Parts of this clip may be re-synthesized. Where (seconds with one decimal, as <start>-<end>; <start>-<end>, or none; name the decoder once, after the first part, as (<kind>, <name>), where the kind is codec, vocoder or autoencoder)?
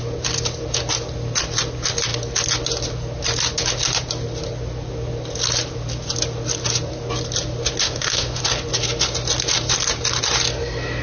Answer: 7.8-8.4 (autoencoder, DAC-VAE)